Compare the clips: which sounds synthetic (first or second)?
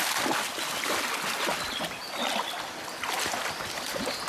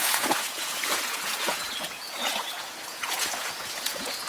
second